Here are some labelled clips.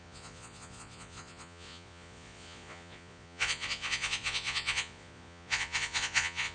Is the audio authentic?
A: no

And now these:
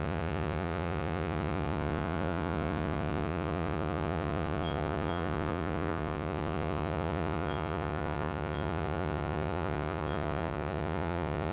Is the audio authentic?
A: no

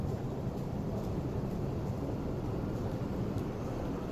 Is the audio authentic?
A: no